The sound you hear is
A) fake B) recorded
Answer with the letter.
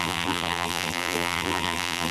A